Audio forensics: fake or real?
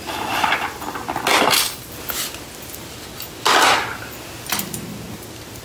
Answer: real